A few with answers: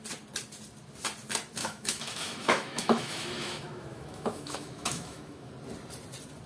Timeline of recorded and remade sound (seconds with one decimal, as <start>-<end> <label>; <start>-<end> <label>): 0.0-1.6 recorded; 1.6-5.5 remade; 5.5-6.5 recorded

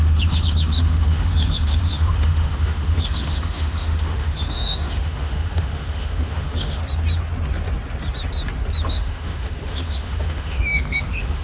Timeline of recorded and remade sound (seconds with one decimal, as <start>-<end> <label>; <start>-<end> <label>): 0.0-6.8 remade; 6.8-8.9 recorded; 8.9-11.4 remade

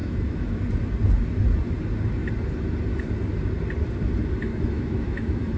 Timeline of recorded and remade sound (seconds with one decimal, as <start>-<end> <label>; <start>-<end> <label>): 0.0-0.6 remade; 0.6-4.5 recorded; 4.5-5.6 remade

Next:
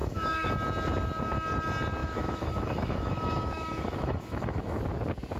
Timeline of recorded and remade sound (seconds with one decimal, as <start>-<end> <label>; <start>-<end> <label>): 0.0-0.5 remade; 0.5-2.0 recorded; 2.0-4.8 remade; 4.8-5.4 recorded